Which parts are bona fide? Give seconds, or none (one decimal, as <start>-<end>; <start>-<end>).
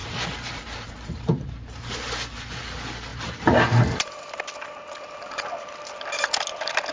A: 2.1-3.1; 4.5-6.9